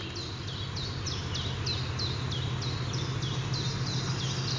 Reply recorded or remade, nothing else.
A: recorded